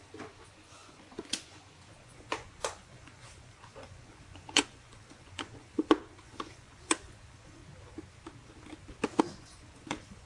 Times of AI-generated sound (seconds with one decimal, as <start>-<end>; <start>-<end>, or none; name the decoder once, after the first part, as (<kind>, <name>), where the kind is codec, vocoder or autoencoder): 0.0-7.6 (vocoder, Vocos); 9.2-10.3